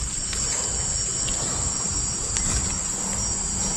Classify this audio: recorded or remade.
recorded